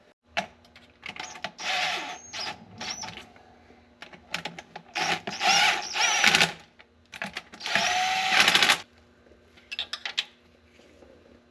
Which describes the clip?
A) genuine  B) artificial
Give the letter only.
A